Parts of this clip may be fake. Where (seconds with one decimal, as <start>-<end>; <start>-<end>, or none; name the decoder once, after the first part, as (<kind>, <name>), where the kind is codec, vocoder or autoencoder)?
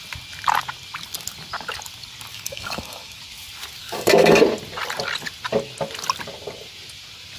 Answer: 2.3-3.2 (codec, DAC); 3.8-4.4